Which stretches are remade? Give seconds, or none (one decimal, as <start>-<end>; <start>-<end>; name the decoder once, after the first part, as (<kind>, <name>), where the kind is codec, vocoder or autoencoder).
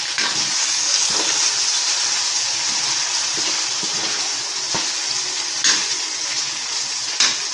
0.6-1.4 (codec, DAC)